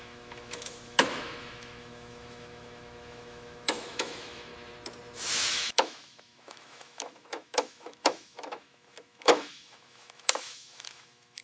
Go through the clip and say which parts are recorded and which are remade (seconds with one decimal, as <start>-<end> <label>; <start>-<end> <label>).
0.0-4.5 remade; 4.5-5.5 recorded; 5.5-11.4 remade